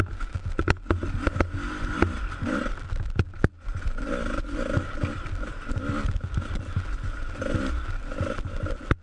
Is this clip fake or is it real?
real